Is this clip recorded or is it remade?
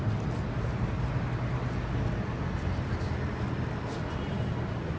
recorded